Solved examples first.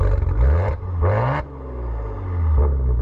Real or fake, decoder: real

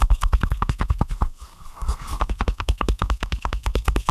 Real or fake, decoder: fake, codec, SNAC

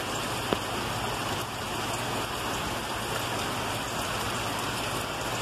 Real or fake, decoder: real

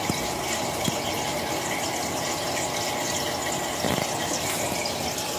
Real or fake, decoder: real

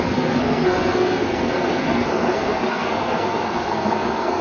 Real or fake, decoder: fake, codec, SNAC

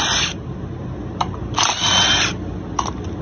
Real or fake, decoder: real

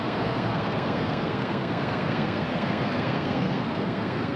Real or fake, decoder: fake, codec, SNAC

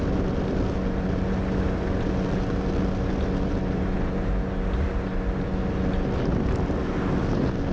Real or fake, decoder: real